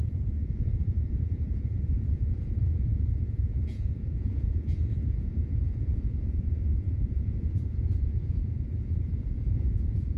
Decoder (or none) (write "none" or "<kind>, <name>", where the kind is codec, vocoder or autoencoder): vocoder, Vocos